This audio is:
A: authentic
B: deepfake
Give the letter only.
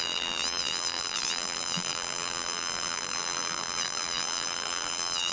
B